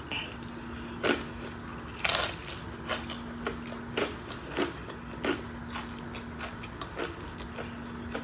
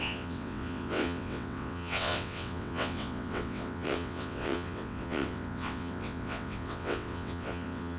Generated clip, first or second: second